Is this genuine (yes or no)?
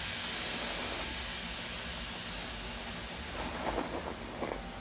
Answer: yes